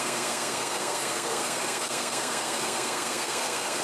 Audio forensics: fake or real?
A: fake